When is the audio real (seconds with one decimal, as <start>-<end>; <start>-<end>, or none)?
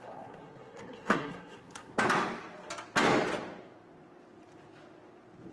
1.9-5.5